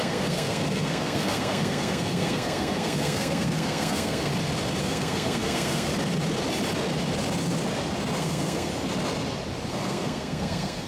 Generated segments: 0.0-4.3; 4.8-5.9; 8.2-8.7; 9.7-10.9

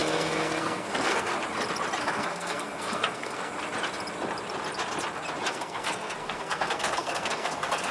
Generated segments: 0.0-1.3; 2.0-3.5; 5.5-7.9

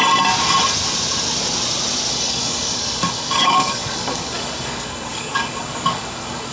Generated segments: 2.1-6.5

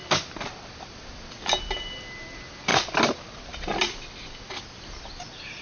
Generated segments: none

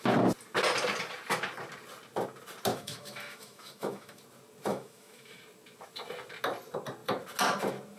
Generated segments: 2.7-4.2; 4.7-5.4